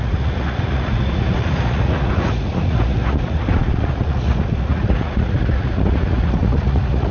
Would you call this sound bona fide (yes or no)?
no